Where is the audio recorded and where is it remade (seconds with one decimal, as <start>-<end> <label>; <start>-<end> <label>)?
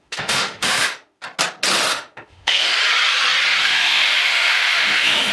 0.0-1.2 remade; 1.2-1.9 recorded; 1.9-2.7 remade; 2.7-3.6 recorded; 3.6-5.3 remade